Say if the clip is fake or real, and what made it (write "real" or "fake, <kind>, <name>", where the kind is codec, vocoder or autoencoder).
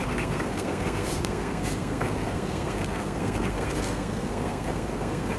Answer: fake, codec, SNAC